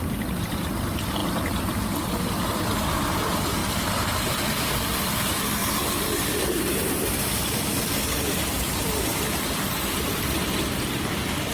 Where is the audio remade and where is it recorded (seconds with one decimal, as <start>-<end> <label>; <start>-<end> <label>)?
0.0-1.2 remade; 1.2-2.3 recorded; 2.3-3.6 remade; 3.6-4.3 recorded; 4.3-5.6 remade; 5.6-6.9 recorded; 6.9-11.5 remade

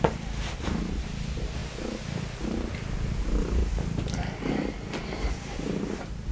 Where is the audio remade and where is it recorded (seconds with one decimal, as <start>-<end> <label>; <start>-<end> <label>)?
0.0-1.6 remade; 1.6-2.4 recorded; 2.4-3.6 remade; 3.6-4.5 recorded; 4.5-6.3 remade

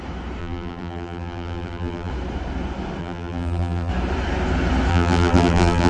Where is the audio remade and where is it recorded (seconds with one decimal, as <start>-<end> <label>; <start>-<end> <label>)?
0.0-0.4 recorded; 0.4-2.1 remade; 2.1-3.0 recorded; 3.0-3.9 remade; 3.9-4.9 recorded; 4.9-5.9 remade